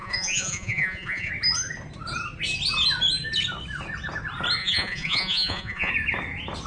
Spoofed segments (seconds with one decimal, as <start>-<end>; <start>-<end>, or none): 0.0-1.3; 4.6-5.9